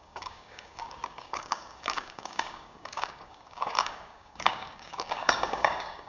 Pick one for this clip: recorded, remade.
remade